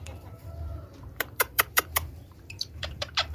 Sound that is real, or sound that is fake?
fake